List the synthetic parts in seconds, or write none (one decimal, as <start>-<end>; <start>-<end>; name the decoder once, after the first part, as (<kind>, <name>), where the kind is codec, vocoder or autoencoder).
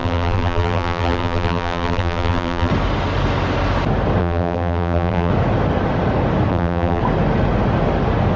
0.0-2.7 (vocoder, BigVGAN v2); 4.2-5.3; 6.5-7.0